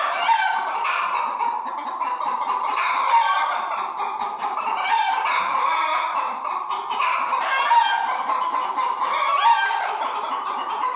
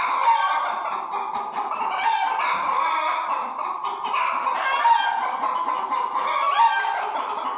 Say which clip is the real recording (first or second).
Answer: second